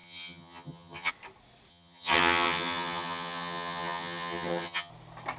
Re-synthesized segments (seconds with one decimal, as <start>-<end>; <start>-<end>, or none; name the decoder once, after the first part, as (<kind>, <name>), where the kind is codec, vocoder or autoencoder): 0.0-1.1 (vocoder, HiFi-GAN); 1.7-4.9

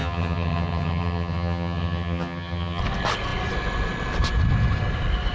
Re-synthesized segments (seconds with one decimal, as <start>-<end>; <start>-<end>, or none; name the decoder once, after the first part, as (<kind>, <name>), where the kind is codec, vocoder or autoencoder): 0.0-2.8 (vocoder, HiFi-GAN)

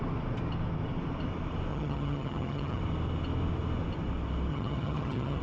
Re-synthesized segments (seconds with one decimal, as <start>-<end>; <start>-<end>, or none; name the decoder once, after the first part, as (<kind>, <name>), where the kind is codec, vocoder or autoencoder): 1.7-2.8 (vocoder, HiFi-GAN); 4.5-5.4

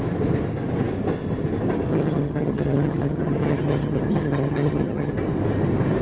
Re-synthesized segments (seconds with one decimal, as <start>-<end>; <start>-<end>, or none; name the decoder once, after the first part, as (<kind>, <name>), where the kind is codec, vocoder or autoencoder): 1.9-5.1 (vocoder, HiFi-GAN)

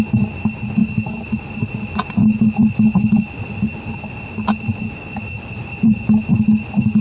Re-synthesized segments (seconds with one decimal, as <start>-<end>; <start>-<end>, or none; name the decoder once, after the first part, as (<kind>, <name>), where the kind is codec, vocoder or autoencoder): none

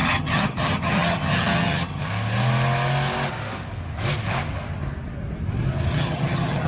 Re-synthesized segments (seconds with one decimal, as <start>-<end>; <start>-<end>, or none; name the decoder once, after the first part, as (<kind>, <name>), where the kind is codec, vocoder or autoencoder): 0.0-2.0 (vocoder, HiFi-GAN); 5.9-6.7

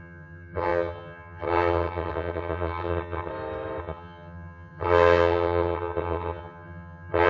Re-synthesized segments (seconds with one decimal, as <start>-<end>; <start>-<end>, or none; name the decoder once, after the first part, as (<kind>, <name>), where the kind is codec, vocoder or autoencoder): 0.0-3.3 (vocoder, HiFi-GAN); 3.8-7.3